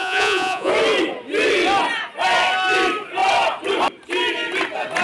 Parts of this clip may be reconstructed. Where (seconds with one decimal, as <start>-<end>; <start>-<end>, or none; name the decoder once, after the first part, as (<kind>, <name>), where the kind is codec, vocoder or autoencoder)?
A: 0.0-0.7 (vocoder, Vocos)